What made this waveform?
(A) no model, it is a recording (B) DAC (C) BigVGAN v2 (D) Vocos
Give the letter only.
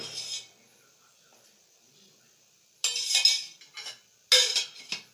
A